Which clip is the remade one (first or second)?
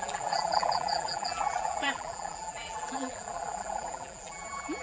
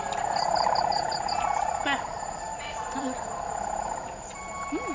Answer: first